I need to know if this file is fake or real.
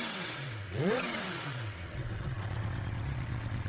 fake